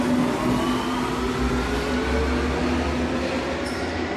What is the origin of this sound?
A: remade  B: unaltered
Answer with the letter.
B